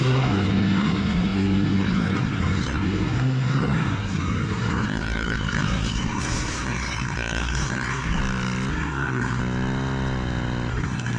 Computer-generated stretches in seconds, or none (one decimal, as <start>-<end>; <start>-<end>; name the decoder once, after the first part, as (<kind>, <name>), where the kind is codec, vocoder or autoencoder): 0.0-8.2 (codec, SNAC); 8.7-9.4; 10.7-11.2